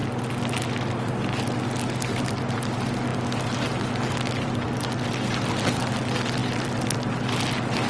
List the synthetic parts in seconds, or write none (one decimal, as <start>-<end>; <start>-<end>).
none